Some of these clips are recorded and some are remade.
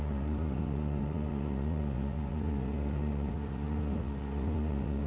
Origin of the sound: remade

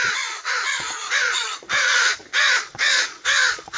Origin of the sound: remade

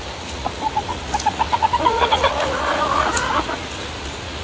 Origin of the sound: remade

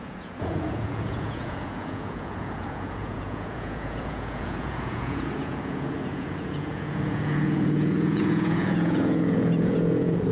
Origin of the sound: remade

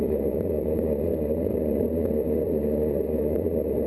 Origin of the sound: remade